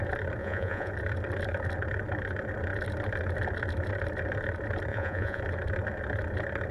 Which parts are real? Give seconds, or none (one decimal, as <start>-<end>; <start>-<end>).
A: 0.0-0.4; 0.9-4.9; 5.4-6.7